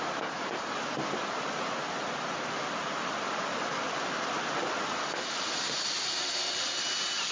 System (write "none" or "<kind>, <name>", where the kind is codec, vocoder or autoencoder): none